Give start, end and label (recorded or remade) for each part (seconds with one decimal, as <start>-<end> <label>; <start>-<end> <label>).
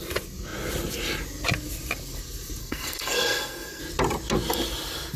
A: 0.0-2.6 recorded; 2.6-3.8 remade; 3.8-5.2 recorded